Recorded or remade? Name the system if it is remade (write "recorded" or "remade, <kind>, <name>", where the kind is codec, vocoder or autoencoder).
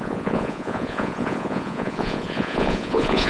remade, vocoder, Vocos